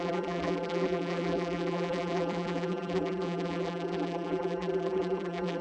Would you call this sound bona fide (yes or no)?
no